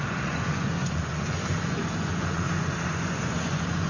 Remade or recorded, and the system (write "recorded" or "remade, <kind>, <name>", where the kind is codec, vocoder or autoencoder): remade, vocoder, Vocos